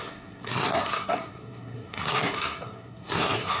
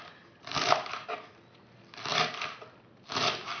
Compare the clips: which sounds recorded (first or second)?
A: second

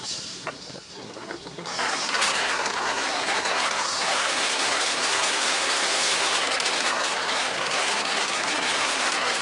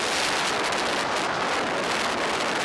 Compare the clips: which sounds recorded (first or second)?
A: second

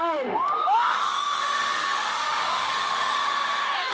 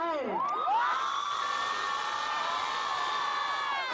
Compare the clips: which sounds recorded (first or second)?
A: second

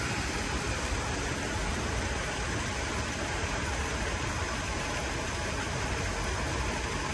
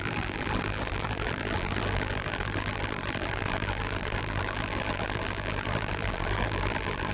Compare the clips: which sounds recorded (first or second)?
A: first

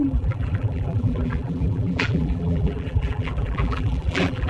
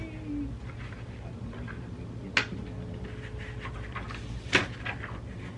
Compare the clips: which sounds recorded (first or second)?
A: second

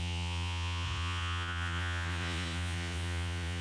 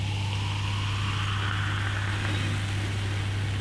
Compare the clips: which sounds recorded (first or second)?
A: second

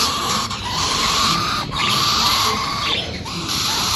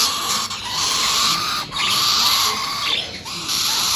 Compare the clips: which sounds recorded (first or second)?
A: second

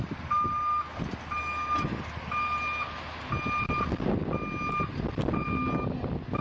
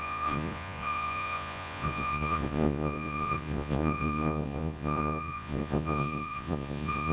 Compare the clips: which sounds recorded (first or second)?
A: first